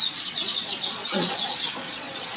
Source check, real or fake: fake